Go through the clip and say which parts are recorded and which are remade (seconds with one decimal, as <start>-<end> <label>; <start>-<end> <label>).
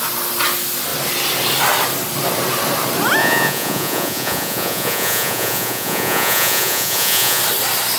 0.0-3.2 recorded; 3.2-7.4 remade; 7.4-8.0 recorded